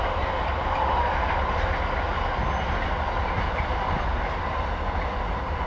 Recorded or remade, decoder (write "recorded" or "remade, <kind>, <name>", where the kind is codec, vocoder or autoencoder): recorded